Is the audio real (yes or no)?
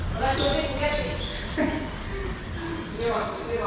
yes